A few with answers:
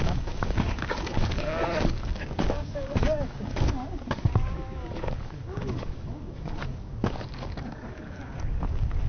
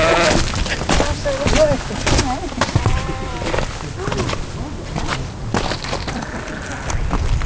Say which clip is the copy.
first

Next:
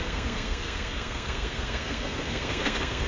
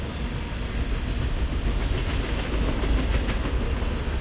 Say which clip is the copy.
first